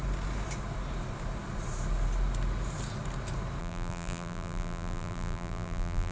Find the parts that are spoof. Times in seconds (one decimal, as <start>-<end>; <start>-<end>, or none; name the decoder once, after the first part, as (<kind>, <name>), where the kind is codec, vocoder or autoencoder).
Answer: 3.6-6.1 (vocoder, BigVGAN v2)